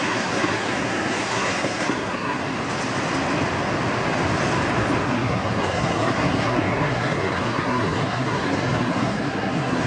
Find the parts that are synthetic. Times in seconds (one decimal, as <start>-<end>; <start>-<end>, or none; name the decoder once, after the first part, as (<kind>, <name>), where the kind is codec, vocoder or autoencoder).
0.0-2.4 (codec, SNAC); 5.0-9.9